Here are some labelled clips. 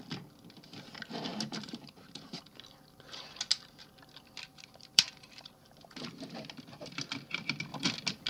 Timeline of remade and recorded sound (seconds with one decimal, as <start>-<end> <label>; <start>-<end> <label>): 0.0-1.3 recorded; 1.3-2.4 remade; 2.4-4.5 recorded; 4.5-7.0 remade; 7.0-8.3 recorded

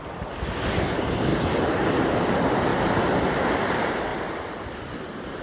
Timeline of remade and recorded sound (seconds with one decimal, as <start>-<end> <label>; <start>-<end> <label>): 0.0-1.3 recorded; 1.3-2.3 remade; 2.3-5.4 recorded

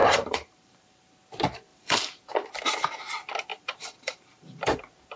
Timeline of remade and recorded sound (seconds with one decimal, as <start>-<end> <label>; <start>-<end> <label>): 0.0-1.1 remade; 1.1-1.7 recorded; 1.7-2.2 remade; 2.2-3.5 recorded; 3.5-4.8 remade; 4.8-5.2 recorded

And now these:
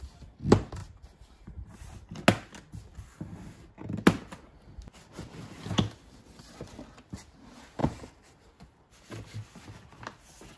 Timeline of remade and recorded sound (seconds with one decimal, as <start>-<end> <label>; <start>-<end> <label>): 0.0-0.8 recorded; 0.8-1.8 remade; 1.8-7.8 recorded; 7.8-8.5 remade; 8.5-10.6 recorded

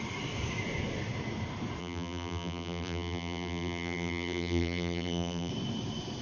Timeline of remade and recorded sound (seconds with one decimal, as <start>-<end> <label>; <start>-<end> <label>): 0.0-1.8 recorded; 1.8-5.5 remade; 5.5-6.2 recorded